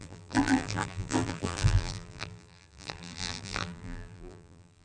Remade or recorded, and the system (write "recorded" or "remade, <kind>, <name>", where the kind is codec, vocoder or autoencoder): remade, vocoder, BigVGAN v2